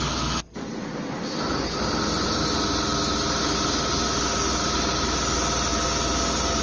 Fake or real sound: real